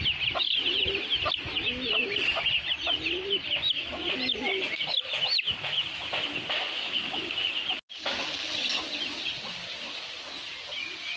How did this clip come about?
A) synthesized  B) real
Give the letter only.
B